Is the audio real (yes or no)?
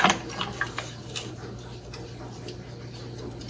yes